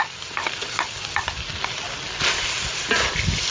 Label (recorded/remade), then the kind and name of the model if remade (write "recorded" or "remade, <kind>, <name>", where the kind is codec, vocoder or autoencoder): recorded